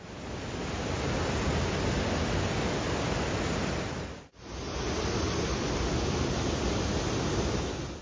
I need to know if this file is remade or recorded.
recorded